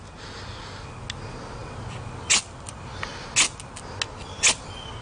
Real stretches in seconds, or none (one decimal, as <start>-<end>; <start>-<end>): 0.0-5.0